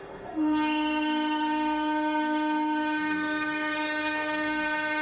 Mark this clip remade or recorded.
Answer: remade